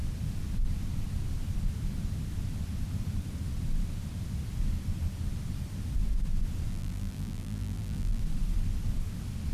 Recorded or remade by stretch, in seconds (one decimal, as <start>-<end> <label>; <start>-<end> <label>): 0.0-6.7 recorded; 6.7-8.2 remade; 8.2-9.5 recorded